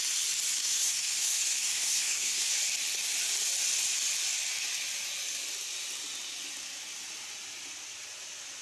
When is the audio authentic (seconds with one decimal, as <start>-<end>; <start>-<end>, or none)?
0.0-0.6; 2.5-8.6